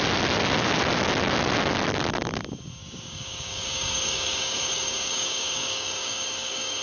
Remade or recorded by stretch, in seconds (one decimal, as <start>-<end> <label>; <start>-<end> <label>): 0.0-2.8 recorded; 2.8-6.8 remade